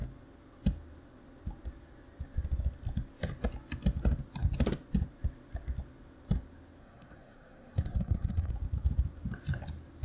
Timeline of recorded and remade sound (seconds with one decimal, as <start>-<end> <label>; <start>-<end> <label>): 0.0-6.8 recorded; 6.8-8.5 remade; 8.5-10.0 recorded

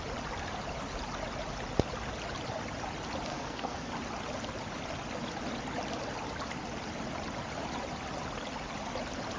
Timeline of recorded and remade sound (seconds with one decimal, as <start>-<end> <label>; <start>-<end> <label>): 0.0-3.3 recorded; 3.3-3.9 remade; 3.9-9.4 recorded

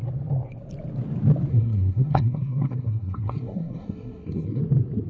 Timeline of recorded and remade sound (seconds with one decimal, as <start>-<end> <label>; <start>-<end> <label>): 0.0-1.5 recorded; 1.5-4.6 remade; 4.6-5.1 recorded

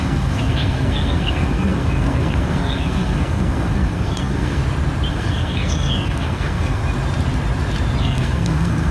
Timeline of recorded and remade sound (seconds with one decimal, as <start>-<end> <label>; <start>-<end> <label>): 0.0-4.6 remade; 4.6-5.1 recorded; 5.1-6.8 remade; 6.8-8.0 recorded; 8.0-8.9 remade

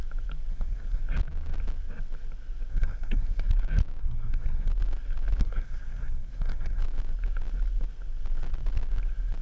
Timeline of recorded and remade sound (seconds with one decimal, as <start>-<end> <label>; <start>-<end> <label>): 0.0-0.5 recorded; 0.5-1.0 remade; 1.0-2.7 recorded; 2.7-3.5 remade; 3.5-4.0 recorded; 4.0-4.7 remade; 4.7-5.4 recorded; 5.4-6.8 remade; 6.8-9.4 recorded